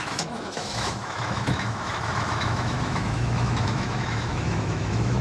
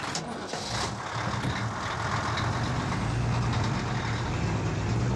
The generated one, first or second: first